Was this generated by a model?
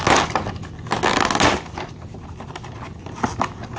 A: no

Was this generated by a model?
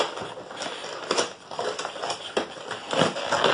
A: no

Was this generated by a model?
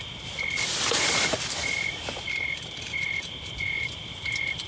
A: no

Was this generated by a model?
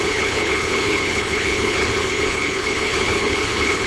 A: yes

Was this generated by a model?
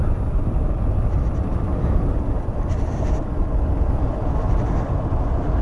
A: no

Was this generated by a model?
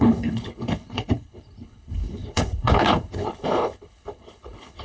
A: yes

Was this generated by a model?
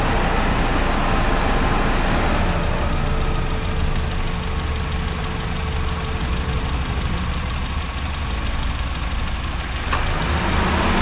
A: no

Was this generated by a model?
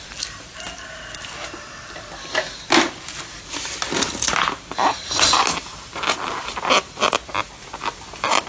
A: no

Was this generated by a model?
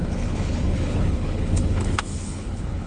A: yes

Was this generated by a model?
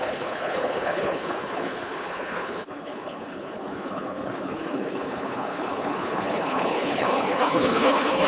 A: yes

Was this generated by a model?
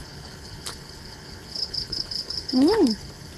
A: yes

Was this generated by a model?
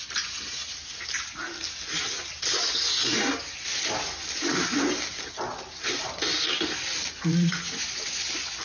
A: no